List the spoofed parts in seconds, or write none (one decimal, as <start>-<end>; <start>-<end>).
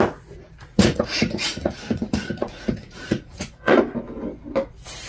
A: 0.7-3.8